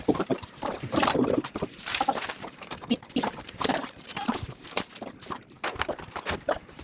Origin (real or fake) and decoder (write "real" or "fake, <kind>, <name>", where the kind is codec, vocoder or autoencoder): fake, vocoder, BigVGAN v2